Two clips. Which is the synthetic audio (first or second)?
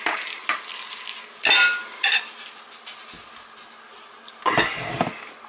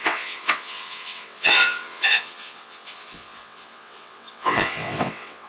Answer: second